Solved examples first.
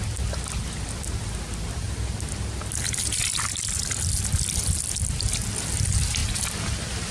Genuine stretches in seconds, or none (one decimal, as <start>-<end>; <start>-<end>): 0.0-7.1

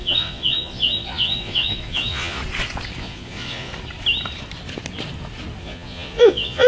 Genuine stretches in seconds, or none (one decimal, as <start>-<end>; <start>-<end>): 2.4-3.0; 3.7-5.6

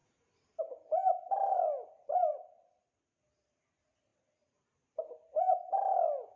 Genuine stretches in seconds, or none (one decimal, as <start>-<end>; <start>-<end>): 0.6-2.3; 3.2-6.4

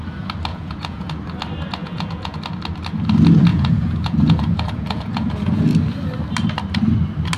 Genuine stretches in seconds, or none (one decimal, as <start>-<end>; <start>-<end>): 0.0-0.5; 1.1-1.8; 2.4-3.5; 5.6-7.4